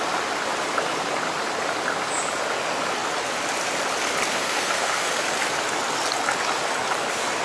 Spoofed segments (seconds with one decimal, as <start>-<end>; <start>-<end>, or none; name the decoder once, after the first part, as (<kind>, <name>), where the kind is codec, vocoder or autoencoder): 4.3-5.2 (codec, SNAC)